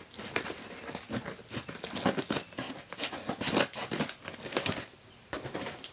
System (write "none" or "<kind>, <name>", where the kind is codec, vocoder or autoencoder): none